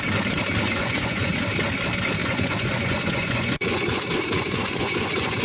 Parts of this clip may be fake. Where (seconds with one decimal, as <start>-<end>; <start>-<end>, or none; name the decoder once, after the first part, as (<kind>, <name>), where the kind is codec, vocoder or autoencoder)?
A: 0.8-1.3 (vocoder, Vocos); 2.2-5.4